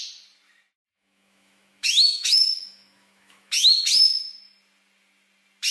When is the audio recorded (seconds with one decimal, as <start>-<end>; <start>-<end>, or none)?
0.0-0.9; 3.7-5.7